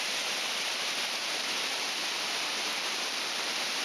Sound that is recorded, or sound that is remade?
recorded